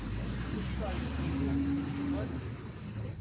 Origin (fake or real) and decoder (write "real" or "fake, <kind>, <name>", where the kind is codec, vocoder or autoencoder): real